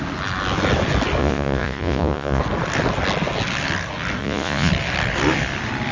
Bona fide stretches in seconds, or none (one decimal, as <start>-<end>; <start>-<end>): 0.0-1.2; 2.4-4.2; 4.7-5.9